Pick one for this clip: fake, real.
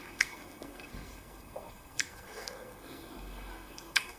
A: fake